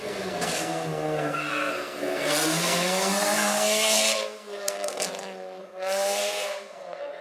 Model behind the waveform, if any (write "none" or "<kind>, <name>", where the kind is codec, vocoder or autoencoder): codec, SNAC